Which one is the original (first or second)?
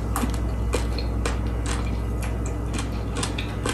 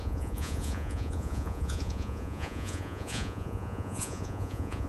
first